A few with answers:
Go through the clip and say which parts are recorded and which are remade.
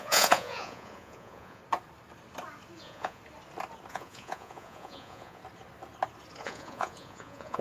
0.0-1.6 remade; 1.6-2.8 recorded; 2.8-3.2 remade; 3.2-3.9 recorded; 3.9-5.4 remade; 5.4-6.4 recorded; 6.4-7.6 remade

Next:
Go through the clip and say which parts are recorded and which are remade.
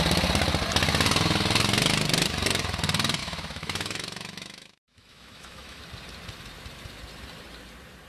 0.0-3.2 recorded; 3.2-5.8 remade; 5.8-8.1 recorded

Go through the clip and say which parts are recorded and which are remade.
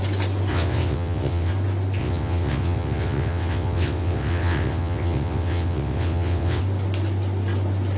0.0-0.5 recorded; 0.5-1.5 remade; 1.5-2.0 recorded; 2.0-6.6 remade; 6.6-8.0 recorded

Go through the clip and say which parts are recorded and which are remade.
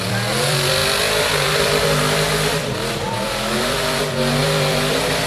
0.0-5.3 remade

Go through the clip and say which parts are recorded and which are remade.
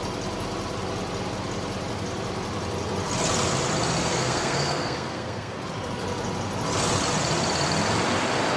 0.0-4.0 recorded; 4.0-5.6 remade; 5.6-8.6 recorded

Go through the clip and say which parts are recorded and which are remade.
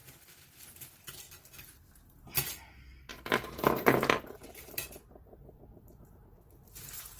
0.0-0.9 remade; 0.9-3.1 recorded; 3.1-4.5 remade; 4.5-7.2 recorded